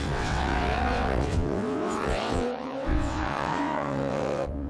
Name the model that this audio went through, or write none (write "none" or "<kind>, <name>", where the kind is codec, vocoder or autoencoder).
vocoder, WaveNeXt